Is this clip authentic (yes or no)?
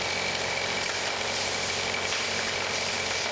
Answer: yes